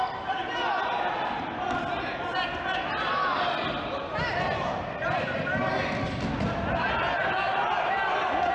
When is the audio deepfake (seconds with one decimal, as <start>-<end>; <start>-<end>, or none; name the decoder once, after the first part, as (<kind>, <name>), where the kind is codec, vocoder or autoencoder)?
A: none